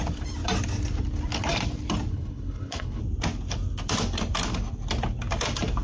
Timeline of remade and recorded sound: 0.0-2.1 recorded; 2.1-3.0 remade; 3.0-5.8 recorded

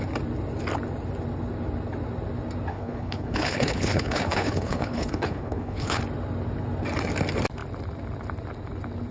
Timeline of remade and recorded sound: 0.0-2.7 recorded; 2.7-6.0 remade; 6.0-9.1 recorded

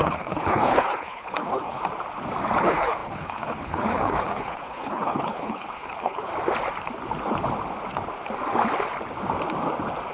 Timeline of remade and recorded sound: 0.0-1.8 remade; 1.8-2.6 recorded; 2.6-6.3 remade; 6.3-10.1 recorded

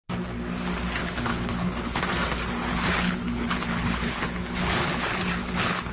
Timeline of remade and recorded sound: 0.0-1.0 recorded; 1.0-2.0 remade; 2.0-2.7 recorded; 2.7-5.9 remade

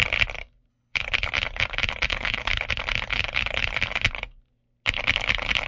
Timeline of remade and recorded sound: 0.0-0.7 recorded; 0.7-1.3 remade; 1.3-2.1 recorded; 2.1-2.7 remade; 2.7-3.1 recorded; 3.1-3.7 remade; 3.7-5.7 recorded